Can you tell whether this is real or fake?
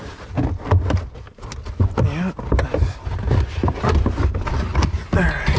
real